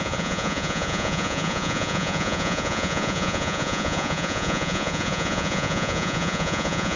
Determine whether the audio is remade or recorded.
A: remade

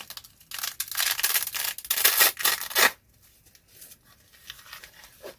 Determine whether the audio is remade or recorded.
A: recorded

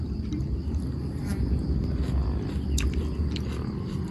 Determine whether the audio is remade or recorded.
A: recorded